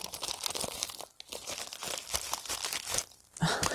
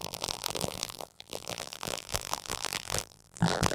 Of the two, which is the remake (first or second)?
second